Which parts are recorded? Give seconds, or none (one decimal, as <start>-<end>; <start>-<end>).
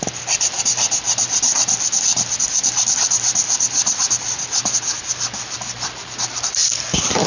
none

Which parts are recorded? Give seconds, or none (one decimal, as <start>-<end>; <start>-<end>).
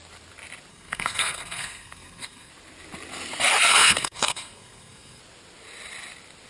0.0-0.7; 2.5-3.7; 5.2-6.5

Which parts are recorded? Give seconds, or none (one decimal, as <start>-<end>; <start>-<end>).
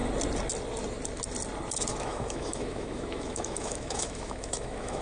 0.0-1.9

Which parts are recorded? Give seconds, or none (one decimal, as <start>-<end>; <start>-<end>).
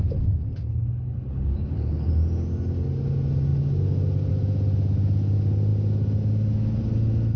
0.0-0.7; 2.1-7.4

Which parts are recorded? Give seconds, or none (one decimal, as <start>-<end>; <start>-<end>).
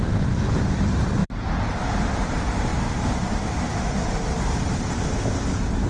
1.2-1.8; 2.7-5.4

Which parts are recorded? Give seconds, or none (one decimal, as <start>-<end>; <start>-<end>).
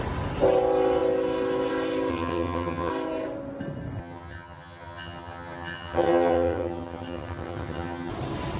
0.0-2.1; 2.9-4.0; 8.1-8.6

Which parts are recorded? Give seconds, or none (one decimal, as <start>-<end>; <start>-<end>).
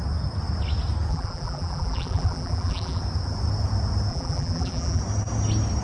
0.0-1.1; 3.0-4.1; 5.0-5.8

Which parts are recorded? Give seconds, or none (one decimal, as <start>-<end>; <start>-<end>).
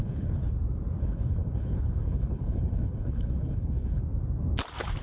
0.5-1.0; 4.0-5.0